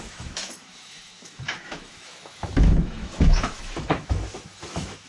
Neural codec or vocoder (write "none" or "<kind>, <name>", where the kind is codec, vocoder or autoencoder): autoencoder, DAC-VAE